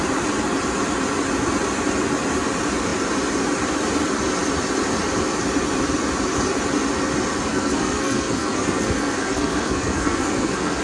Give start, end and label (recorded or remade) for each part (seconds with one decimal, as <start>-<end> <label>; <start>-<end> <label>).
0.0-7.5 recorded; 7.5-10.8 remade